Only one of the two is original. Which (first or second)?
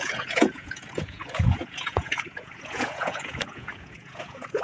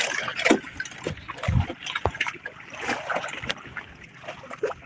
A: second